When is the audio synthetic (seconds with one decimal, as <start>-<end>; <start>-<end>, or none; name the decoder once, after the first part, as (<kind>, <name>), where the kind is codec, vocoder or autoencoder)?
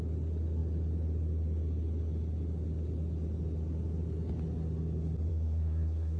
5.3-6.2 (codec, SNAC)